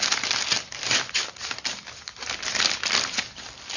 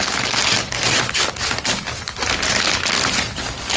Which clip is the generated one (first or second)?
first